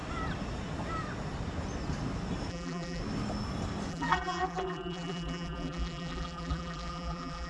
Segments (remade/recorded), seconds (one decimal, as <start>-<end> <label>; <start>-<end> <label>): 0.0-2.5 recorded; 2.5-3.0 remade; 3.0-3.9 recorded; 3.9-7.5 remade